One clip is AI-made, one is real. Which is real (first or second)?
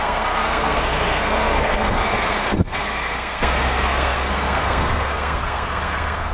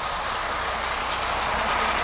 second